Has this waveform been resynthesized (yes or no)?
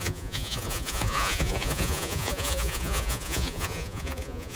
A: yes